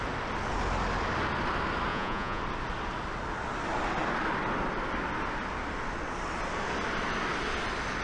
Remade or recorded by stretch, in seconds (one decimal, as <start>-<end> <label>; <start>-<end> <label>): 0.0-1.9 recorded; 1.9-2.4 remade; 2.4-8.0 recorded